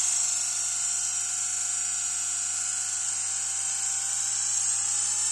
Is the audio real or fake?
real